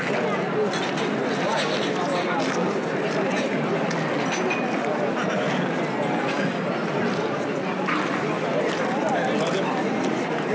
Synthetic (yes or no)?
no